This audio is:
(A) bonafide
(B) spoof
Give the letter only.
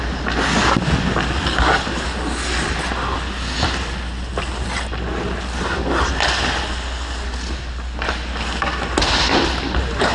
A